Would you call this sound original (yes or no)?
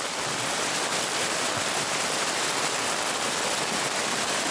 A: yes